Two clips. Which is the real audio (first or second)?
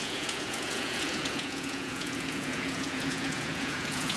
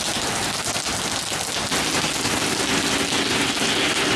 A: second